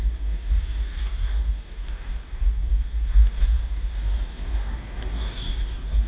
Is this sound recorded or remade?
remade